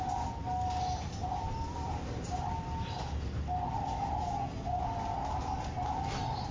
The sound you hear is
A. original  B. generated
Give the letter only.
A